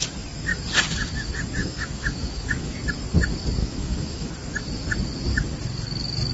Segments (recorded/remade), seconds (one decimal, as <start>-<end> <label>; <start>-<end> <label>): 0.0-1.6 recorded; 1.6-2.8 remade; 2.8-3.6 recorded; 3.6-4.3 remade; 4.3-6.3 recorded